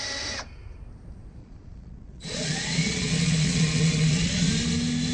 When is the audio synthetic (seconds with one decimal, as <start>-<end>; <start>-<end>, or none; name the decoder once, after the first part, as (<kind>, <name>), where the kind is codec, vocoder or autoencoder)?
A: 1.4-4.5 (vocoder, Vocos)